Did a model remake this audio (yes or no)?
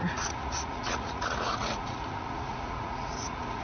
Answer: yes